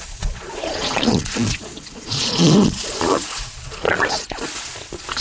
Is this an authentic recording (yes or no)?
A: no